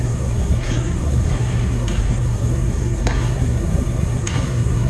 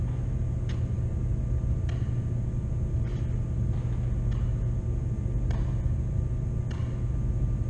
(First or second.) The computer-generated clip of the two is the first